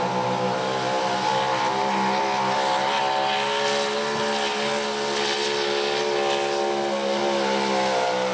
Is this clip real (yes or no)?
yes